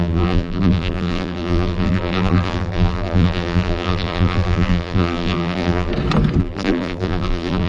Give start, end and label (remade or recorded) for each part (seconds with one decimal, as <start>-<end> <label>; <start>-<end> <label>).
0.0-5.9 remade; 5.9-6.4 recorded; 6.4-7.7 remade